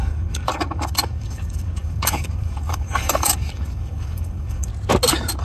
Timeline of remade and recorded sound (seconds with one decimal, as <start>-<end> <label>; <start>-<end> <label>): 0.0-4.7 remade; 4.7-5.4 recorded